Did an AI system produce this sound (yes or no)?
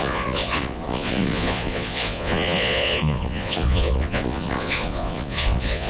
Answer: yes